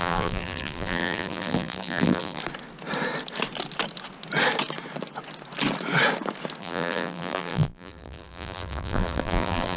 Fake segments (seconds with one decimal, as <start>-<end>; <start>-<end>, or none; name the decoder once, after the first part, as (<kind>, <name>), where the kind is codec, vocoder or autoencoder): 0.0-2.4 (vocoder, BigVGAN v2); 6.6-9.8